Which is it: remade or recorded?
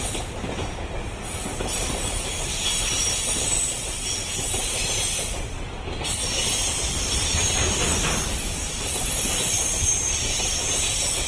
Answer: remade